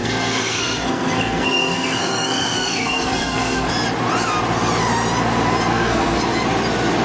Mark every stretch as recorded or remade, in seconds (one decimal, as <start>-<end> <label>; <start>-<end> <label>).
0.0-3.7 remade; 3.7-5.7 recorded; 5.7-6.2 remade; 6.2-7.0 recorded